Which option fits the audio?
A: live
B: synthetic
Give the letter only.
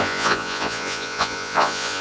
B